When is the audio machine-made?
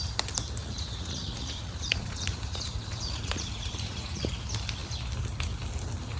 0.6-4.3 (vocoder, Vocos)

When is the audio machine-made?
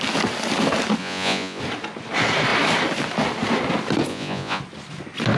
1.0-1.6 (vocoder, Vocos); 4.1-4.6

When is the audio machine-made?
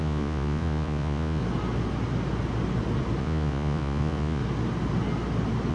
0.0-1.4 (vocoder, Vocos); 3.2-4.4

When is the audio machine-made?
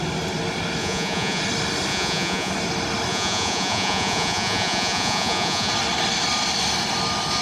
0.8-1.4 (vocoder, Vocos); 1.9-2.5; 3.1-5.7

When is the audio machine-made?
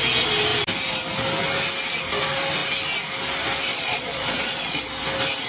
3.7-4.8 (vocoder, Vocos)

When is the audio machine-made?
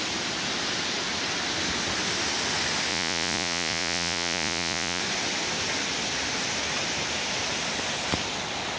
2.9-5.0 (vocoder, Vocos)